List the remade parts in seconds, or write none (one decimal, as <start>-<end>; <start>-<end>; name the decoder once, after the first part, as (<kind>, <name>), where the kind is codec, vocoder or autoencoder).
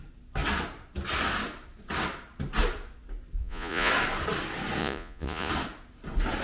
3.4-3.9 (vocoder, Vocos); 4.8-5.5